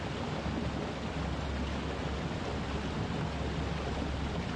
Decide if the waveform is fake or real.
real